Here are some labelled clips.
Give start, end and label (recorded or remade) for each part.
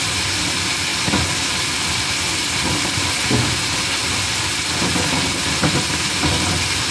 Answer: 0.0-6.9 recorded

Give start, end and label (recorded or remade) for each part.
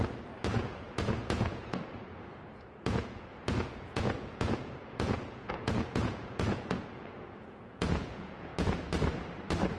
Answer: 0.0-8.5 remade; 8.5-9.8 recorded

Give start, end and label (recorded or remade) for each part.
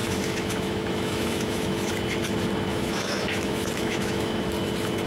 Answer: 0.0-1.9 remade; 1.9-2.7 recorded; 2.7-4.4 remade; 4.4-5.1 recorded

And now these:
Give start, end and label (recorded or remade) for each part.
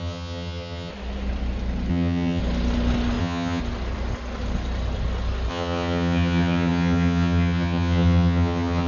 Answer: 0.0-0.9 remade; 0.9-1.9 recorded; 1.9-2.4 remade; 2.4-3.2 recorded; 3.2-3.6 remade; 3.6-5.5 recorded; 5.5-8.9 remade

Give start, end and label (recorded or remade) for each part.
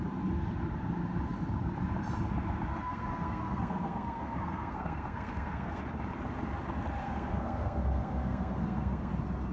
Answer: 0.0-2.7 recorded; 2.7-5.8 remade; 5.8-7.0 recorded; 7.0-9.1 remade; 9.1-9.5 recorded